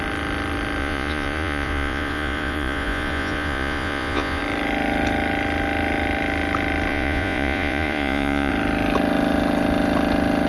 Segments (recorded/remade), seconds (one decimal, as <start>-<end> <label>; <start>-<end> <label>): 0.0-0.8 recorded; 0.8-4.4 remade; 4.4-6.9 recorded; 6.9-8.5 remade; 8.5-10.5 recorded